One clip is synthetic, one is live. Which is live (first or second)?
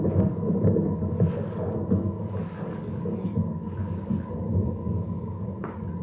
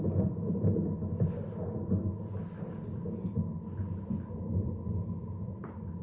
second